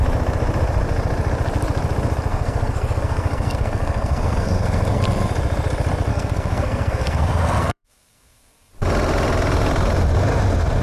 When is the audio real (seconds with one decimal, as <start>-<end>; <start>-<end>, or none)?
0.0-2.3; 5.0-6.1; 8.7-10.8